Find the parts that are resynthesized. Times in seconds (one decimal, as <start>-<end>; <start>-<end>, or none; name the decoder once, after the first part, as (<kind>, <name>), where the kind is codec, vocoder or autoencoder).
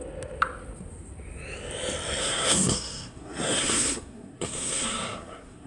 2.2-5.7 (codec, SNAC)